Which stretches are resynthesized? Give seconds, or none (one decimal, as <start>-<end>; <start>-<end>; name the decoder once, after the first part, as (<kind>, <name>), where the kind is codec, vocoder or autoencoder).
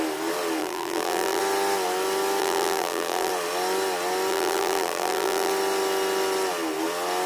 0.6-1.4 (vocoder, BigVGAN v2); 2.4-3.3; 4.3-5.5